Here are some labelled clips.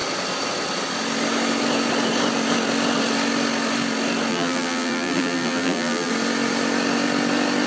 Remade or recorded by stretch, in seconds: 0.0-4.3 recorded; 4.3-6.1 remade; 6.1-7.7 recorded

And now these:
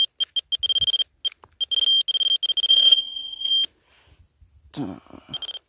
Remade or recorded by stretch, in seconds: 0.0-2.7 recorded; 2.7-3.5 remade; 3.5-5.7 recorded

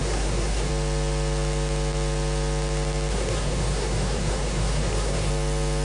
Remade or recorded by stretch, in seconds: 0.0-0.7 remade; 0.7-3.1 recorded; 3.1-5.3 remade; 5.3-5.8 recorded

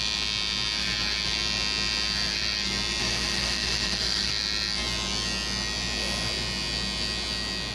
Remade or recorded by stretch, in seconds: 0.0-3.0 recorded; 3.0-4.3 remade; 4.3-7.7 recorded